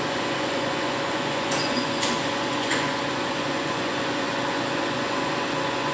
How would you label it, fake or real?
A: fake